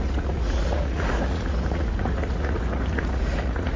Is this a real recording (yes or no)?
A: no